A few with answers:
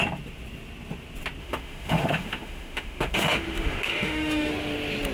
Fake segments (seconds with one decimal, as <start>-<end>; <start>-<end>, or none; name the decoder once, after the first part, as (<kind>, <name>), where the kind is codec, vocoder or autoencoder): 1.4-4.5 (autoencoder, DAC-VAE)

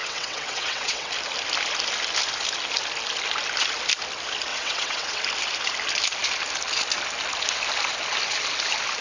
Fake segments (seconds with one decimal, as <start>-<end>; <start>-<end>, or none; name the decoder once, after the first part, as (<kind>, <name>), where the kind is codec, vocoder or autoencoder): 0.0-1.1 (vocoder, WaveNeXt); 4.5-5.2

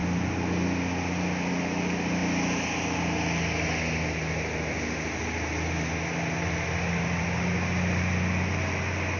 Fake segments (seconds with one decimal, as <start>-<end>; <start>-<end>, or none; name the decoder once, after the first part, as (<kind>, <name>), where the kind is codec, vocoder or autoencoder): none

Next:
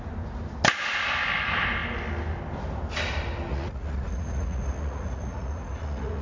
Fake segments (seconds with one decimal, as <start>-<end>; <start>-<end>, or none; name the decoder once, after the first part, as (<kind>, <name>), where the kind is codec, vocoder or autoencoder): 3.5-6.2 (vocoder, Vocos)